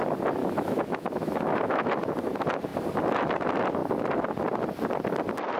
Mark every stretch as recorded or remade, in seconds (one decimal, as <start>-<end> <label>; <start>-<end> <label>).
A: 0.0-0.4 recorded; 0.4-1.9 remade; 1.9-5.6 recorded